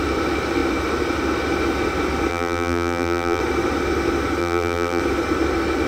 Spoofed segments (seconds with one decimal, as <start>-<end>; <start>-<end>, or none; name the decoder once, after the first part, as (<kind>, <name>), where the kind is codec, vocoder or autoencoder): 2.3-3.4 (vocoder, BigVGAN v2); 4.4-5.0